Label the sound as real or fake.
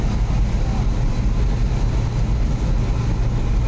real